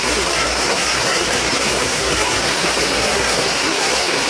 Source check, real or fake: fake